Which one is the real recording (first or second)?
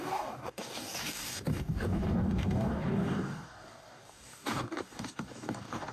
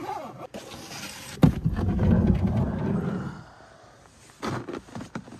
second